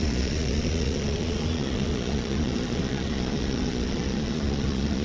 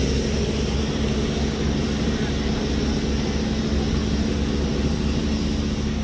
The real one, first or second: second